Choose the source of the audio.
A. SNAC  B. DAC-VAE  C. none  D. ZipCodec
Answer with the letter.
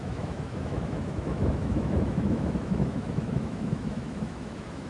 B